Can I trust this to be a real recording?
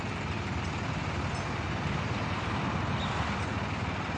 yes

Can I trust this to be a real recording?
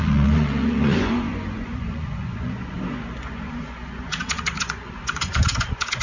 no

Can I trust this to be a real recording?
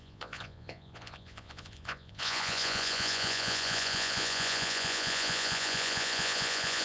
no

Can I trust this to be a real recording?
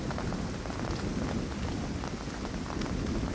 yes